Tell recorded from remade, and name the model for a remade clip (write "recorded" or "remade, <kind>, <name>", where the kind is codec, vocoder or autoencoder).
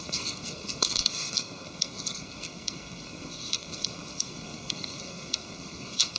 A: remade, codec, SNAC